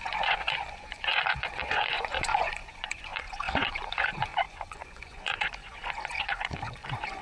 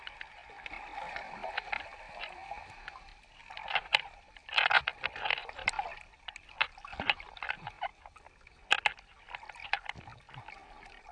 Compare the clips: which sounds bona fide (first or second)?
second